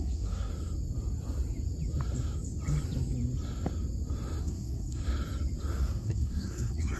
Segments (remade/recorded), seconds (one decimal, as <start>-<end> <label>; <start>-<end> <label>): 0.0-0.5 remade; 0.5-4.4 recorded; 4.4-5.0 remade; 5.0-5.8 recorded; 5.8-7.0 remade